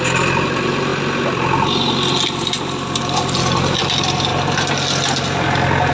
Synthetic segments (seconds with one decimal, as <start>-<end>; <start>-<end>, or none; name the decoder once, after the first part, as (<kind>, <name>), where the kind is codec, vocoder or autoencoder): none